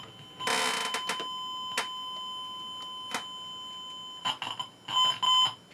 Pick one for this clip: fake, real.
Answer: real